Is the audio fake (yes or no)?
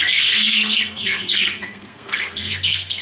yes